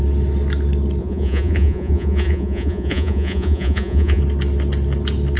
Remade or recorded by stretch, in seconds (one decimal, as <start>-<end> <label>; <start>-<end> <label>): 0.0-1.0 recorded; 1.0-4.2 remade; 4.2-5.4 recorded